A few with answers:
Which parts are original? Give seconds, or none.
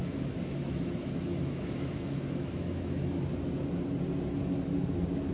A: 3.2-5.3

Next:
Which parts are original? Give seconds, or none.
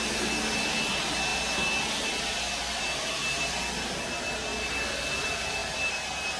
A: 0.0-6.4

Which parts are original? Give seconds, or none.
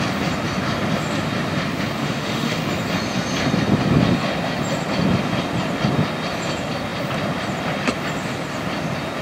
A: 0.0-2.0; 2.6-9.2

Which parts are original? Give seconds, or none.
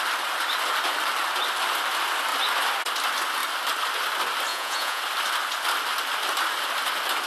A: 0.0-4.5; 5.0-7.3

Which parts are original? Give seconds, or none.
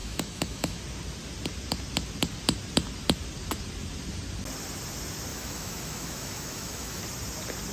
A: 0.8-5.3; 7.0-7.7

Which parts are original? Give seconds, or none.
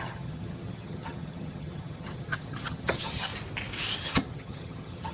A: 3.3-4.0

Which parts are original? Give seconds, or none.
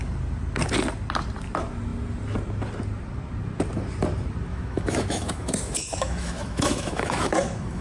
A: 0.0-4.5